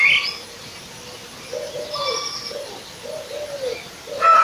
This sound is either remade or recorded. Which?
recorded